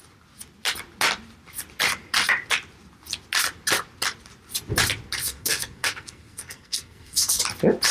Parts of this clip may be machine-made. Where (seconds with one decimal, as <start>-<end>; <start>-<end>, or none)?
5.2-7.4